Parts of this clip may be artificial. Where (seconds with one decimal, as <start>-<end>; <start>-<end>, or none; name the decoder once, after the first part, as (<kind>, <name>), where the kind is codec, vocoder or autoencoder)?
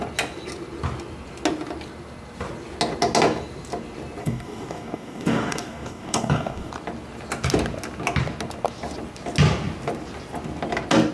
4.2-6.7 (codec, DAC)